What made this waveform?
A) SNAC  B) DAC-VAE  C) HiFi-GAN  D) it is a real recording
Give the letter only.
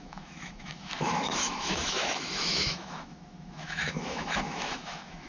B